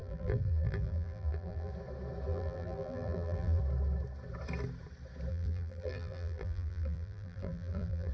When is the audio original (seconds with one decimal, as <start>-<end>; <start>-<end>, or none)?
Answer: 1.7-2.3; 3.6-5.3